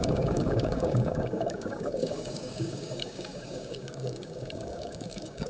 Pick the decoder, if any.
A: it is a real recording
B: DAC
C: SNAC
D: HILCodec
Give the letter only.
B